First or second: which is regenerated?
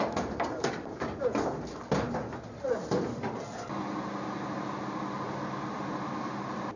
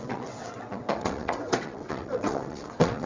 second